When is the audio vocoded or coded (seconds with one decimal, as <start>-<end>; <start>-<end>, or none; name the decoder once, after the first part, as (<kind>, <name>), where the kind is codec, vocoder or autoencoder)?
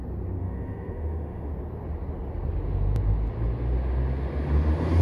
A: 0.4-1.5 (autoencoder, DAC-VAE)